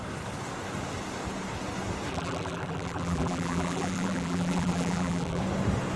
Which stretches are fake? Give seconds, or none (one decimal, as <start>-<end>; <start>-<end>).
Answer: 2.1-5.4

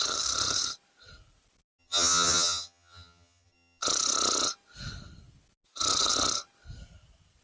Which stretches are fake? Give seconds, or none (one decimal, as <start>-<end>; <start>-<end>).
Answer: 1.8-3.8

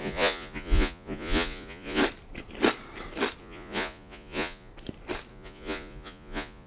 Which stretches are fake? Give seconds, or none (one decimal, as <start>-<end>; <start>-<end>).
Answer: 0.0-2.0; 3.4-4.7; 5.3-6.7